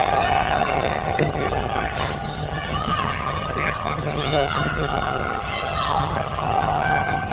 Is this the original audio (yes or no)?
no